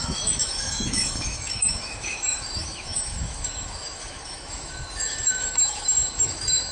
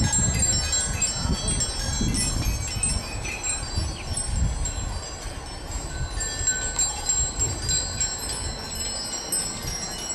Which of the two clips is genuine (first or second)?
second